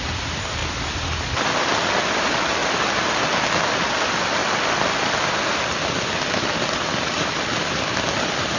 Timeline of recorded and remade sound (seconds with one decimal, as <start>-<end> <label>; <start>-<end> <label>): 0.0-0.6 remade; 0.6-1.4 recorded; 1.4-2.6 remade; 2.6-3.2 recorded; 3.2-4.4 remade; 4.4-5.1 recorded; 5.1-8.6 remade